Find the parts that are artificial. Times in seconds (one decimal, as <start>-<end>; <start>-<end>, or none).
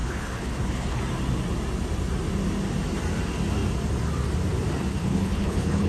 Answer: 0.0-1.0; 4.9-5.9